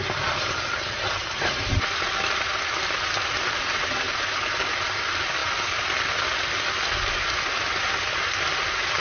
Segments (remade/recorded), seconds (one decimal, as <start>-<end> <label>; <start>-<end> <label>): 0.0-9.0 recorded

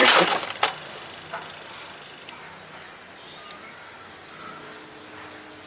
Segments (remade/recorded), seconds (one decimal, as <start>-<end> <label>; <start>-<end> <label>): 0.0-5.7 recorded

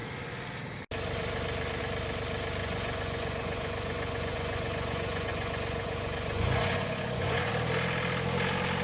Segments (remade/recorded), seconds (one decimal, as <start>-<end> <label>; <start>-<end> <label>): 0.0-2.6 recorded; 2.6-7.5 remade; 7.5-8.8 recorded

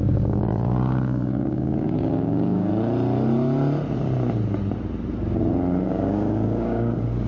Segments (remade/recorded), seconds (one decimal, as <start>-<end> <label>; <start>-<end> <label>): 0.0-2.7 remade; 2.7-5.9 recorded; 5.9-7.3 remade